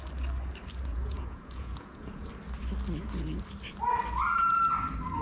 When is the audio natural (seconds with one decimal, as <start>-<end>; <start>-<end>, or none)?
0.0-0.9; 2.3-5.2